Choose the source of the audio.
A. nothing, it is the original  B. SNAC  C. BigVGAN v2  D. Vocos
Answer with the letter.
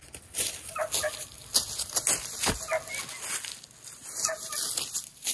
A